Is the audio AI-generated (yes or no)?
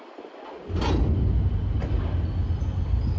no